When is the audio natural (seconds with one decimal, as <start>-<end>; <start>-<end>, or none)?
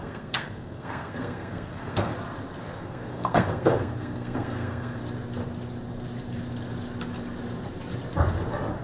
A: 2.1-2.8; 5.0-8.8